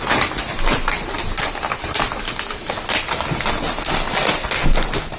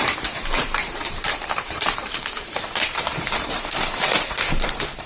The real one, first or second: first